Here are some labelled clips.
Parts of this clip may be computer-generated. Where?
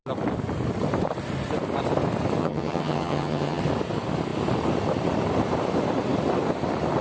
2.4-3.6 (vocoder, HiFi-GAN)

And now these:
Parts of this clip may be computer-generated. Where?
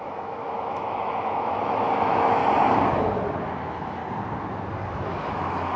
0.0-2.4 (autoencoder, DAC-VAE); 3.4-4.0; 4.9-5.8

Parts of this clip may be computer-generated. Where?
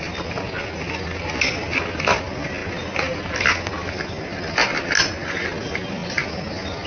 6.0-6.5 (vocoder, BigVGAN v2)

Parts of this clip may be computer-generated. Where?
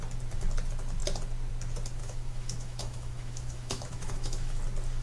2.0-4.6 (autoencoder, DAC-VAE)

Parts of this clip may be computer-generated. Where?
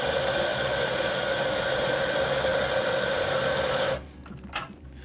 none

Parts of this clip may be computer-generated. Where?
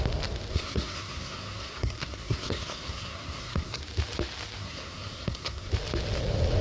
0.5-3.8 (codec, SNAC); 4.6-5.7